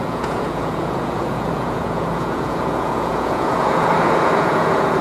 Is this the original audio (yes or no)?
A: no